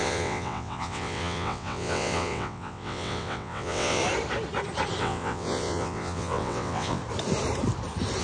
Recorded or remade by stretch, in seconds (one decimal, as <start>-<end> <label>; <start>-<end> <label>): 0.0-4.0 remade; 4.0-5.0 recorded; 5.0-7.0 remade; 7.0-8.2 recorded